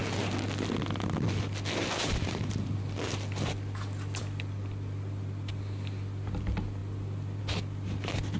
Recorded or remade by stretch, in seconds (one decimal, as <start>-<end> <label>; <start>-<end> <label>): 0.0-8.4 recorded

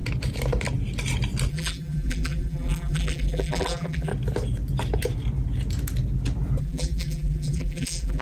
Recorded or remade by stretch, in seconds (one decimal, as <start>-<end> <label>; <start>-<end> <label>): 0.0-1.5 recorded; 1.5-4.1 remade; 4.1-6.6 recorded; 6.6-8.2 remade

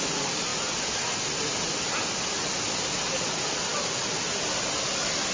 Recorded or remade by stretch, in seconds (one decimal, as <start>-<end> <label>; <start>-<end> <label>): 0.0-0.5 recorded; 0.5-1.1 remade; 1.1-3.7 recorded; 3.7-4.7 remade; 4.7-5.3 recorded

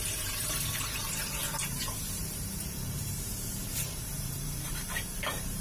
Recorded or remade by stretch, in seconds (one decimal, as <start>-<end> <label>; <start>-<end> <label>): 0.0-5.6 remade

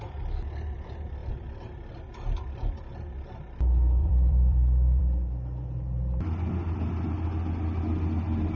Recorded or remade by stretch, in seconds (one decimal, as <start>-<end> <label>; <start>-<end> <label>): 0.0-1.2 recorded; 1.2-2.0 remade; 2.0-4.0 recorded; 4.0-5.0 remade; 5.0-8.6 recorded